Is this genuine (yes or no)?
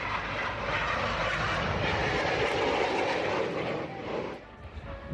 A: yes